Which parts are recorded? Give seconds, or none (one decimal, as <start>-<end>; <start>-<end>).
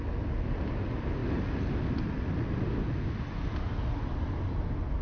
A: 0.0-5.0